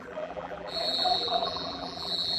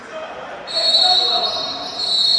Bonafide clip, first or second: second